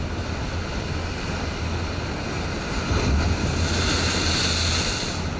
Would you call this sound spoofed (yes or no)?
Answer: no